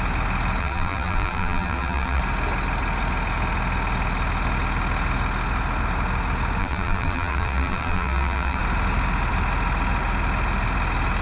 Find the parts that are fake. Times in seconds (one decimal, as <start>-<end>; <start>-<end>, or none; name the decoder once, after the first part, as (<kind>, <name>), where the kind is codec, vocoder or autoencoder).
0.6-2.2 (vocoder, BigVGAN v2); 6.6-8.6